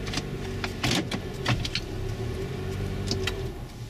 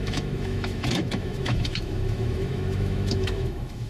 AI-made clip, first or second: second